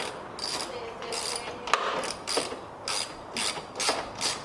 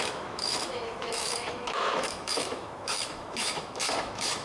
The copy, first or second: second